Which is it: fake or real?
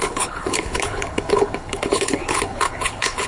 fake